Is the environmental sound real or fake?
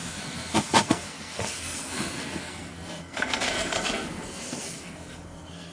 fake